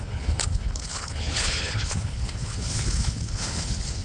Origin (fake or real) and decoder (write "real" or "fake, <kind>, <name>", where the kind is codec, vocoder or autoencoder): fake, codec, HILCodec